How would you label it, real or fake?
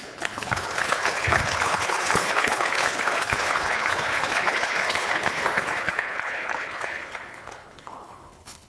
fake